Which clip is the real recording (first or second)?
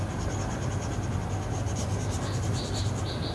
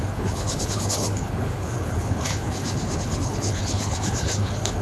first